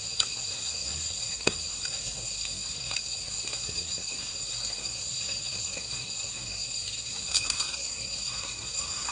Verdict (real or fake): fake